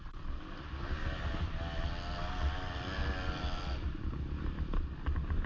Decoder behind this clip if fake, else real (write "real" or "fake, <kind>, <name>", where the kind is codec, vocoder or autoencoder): real